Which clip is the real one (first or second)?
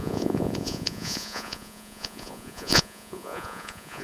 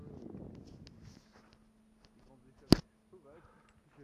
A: second